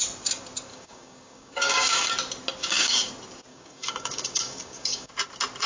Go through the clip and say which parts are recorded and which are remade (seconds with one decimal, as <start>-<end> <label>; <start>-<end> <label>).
0.0-0.7 recorded; 0.7-2.1 remade; 2.1-2.6 recorded; 2.6-3.1 remade; 3.1-3.5 recorded; 3.5-5.1 remade; 5.1-5.7 recorded